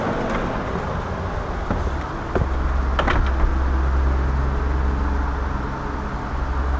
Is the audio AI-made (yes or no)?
no